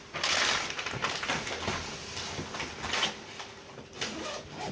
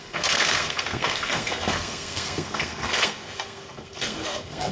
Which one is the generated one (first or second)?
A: second